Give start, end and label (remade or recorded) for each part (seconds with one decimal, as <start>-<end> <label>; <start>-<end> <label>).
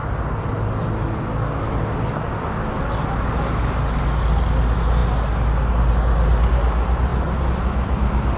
0.0-8.4 recorded